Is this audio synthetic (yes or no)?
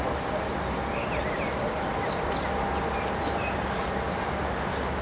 no